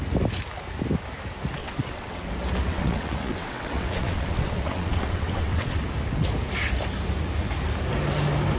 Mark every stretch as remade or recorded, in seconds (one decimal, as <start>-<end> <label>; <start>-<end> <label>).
0.0-1.6 recorded; 1.6-2.3 remade; 2.3-2.7 recorded; 2.7-5.8 remade; 5.8-8.6 recorded